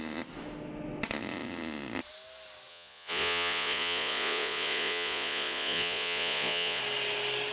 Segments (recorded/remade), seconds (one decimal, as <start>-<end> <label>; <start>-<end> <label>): 0.0-2.7 recorded; 2.7-6.8 remade; 6.8-7.5 recorded